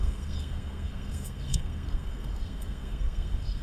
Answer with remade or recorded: remade